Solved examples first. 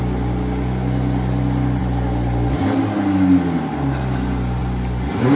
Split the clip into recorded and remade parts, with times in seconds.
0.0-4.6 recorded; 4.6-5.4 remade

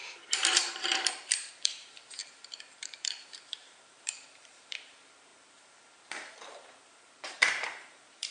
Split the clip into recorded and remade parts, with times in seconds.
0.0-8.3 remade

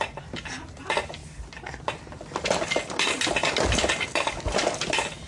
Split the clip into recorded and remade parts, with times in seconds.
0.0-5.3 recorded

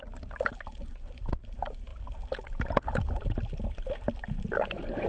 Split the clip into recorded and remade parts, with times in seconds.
0.0-5.1 recorded

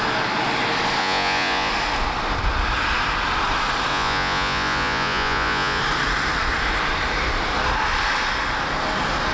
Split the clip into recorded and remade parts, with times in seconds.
0.0-1.0 recorded; 1.0-1.7 remade; 1.7-3.9 recorded; 3.9-5.8 remade; 5.8-9.3 recorded

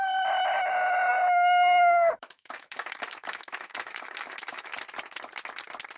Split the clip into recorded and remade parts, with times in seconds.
0.0-1.1 recorded; 1.1-4.7 remade; 4.7-6.0 recorded